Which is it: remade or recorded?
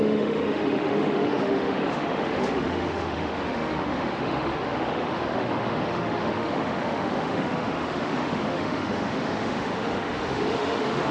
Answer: remade